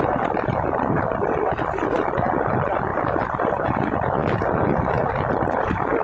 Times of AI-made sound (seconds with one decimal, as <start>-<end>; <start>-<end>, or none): none